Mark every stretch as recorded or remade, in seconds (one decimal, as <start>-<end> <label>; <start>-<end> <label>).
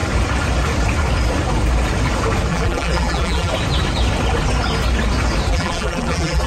0.0-2.5 recorded; 2.5-3.5 remade; 3.5-5.5 recorded; 5.5-6.5 remade